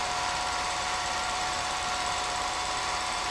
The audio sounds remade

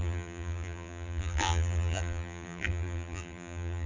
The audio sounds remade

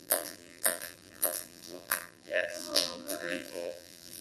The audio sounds remade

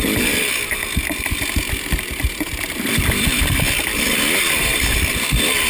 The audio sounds remade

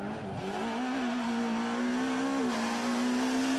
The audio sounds recorded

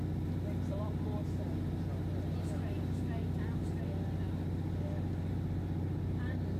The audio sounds recorded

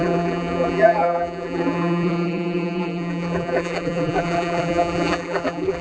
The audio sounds remade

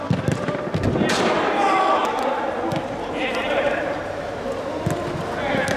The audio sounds recorded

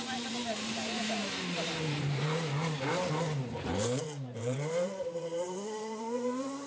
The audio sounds remade